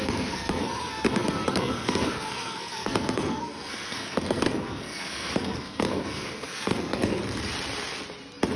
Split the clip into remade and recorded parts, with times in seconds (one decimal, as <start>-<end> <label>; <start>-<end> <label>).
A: 0.0-7.2 remade; 7.2-8.6 recorded